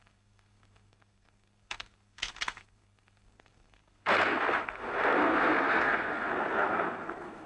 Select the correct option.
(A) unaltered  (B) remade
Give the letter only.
B